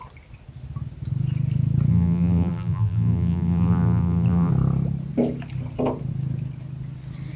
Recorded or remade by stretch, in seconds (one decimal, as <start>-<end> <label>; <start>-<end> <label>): 0.0-1.9 recorded; 1.9-4.5 remade; 4.5-7.4 recorded